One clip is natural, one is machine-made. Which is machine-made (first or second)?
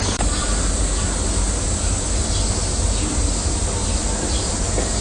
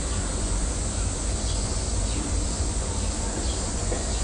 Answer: second